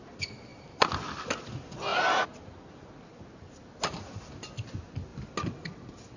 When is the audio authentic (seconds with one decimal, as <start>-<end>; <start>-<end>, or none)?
0.0-6.2